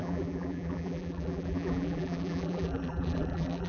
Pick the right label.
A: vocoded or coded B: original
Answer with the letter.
A